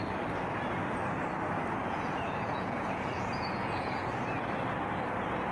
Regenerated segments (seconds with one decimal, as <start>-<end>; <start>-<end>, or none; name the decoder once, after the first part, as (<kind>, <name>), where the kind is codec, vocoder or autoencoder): 1.8-4.1 (vocoder, Vocos)